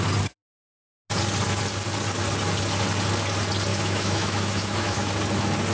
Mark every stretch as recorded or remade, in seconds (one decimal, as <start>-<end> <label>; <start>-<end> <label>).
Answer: 0.0-3.7 recorded; 3.7-5.1 remade; 5.1-5.7 recorded